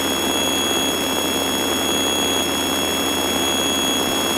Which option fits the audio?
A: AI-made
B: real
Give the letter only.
B